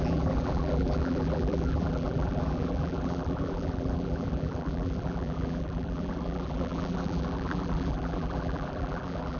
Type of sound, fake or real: fake